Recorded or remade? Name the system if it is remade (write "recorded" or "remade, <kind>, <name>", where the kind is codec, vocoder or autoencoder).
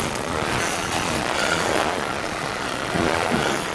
remade, vocoder, Vocos